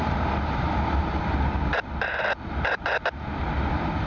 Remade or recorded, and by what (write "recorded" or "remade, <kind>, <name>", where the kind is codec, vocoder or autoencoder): recorded